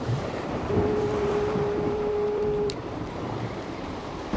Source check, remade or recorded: remade